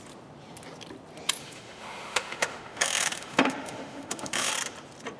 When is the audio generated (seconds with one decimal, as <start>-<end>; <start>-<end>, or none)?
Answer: 1.4-4.5